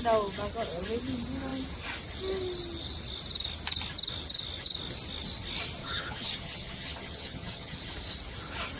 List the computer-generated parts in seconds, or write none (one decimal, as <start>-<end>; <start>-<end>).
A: 5.8-7.8